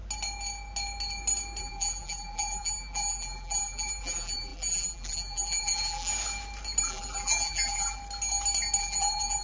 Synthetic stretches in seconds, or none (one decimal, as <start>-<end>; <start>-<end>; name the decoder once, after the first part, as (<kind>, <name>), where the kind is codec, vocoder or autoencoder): 1.6-6.1 (vocoder, BigVGAN v2); 6.8-8.0; 8.8-9.4

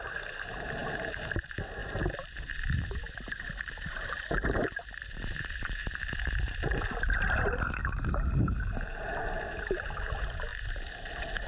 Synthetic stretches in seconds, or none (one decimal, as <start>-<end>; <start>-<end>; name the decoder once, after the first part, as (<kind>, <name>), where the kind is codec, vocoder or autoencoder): 0.0-7.8 (vocoder, BigVGAN v2); 8.4-11.5

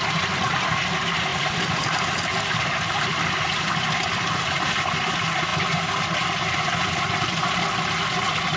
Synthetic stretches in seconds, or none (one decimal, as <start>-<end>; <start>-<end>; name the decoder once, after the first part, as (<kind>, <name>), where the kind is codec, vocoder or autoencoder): 1.3-4.7 (vocoder, BigVGAN v2)

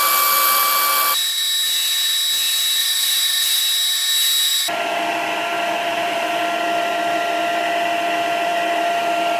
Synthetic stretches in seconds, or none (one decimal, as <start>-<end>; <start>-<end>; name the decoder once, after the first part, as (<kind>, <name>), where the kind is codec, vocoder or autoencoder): 2.8-3.6 (vocoder, BigVGAN v2); 5.9-6.4